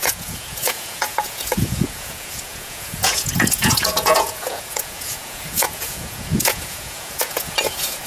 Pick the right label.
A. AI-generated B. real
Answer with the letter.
A